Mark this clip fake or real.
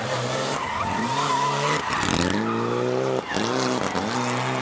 real